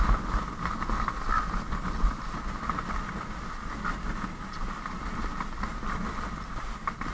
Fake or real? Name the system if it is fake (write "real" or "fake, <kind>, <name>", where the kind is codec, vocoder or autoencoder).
real